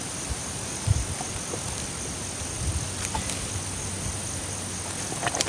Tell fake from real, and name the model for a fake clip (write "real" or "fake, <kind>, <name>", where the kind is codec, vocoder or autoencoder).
real